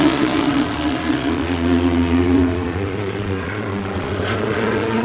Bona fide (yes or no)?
no